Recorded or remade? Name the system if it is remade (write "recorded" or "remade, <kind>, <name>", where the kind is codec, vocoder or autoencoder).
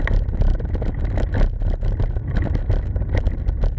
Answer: recorded